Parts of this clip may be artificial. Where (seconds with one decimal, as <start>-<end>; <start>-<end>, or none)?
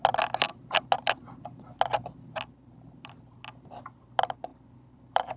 4.5-5.4